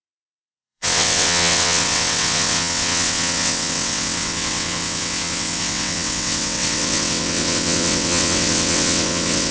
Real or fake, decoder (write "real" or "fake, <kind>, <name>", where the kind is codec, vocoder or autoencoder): fake, vocoder, WaveNeXt